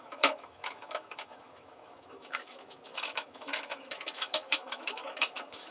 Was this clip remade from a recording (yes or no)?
yes